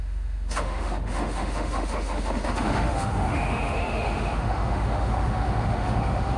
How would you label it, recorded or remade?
remade